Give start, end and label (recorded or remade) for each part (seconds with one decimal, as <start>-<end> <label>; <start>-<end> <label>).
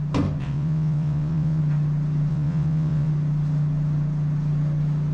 0.0-0.4 recorded; 0.4-1.6 remade; 1.6-2.3 recorded; 2.3-3.1 remade; 3.1-5.1 recorded